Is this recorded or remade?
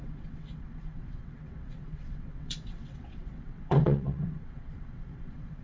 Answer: remade